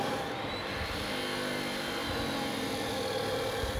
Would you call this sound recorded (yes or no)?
yes